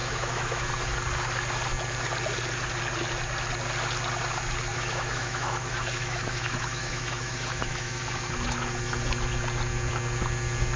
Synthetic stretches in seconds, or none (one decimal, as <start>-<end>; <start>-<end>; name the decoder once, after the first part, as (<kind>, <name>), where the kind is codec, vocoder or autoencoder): 0.0-0.7 (autoencoder, DAC-VAE); 4.7-8.0